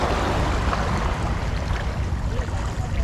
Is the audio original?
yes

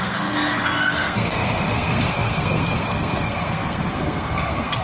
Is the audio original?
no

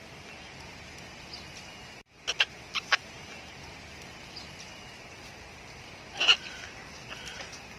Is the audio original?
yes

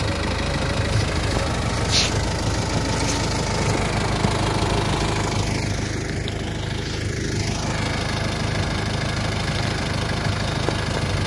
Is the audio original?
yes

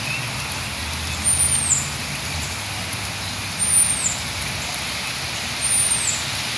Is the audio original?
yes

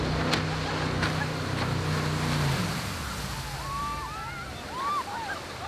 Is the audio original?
yes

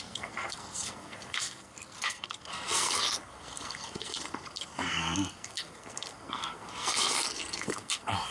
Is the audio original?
no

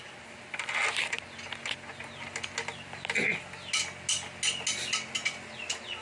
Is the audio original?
yes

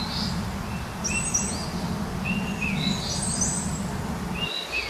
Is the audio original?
yes